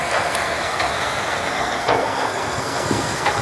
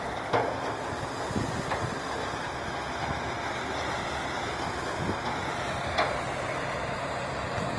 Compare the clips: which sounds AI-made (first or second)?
first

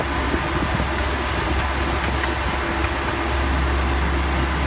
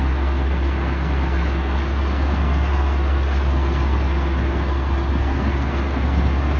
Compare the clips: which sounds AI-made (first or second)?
second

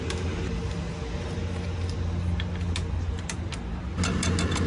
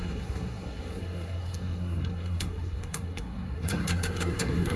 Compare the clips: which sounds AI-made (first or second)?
second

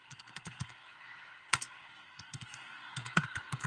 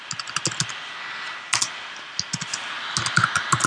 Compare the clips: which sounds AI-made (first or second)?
first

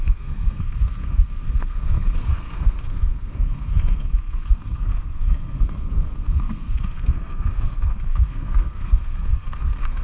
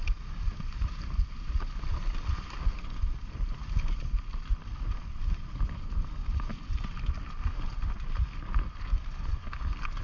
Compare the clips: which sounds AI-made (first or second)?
first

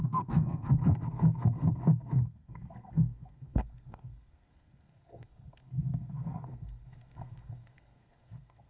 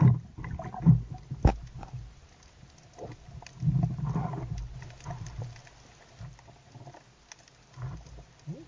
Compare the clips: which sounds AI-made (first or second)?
first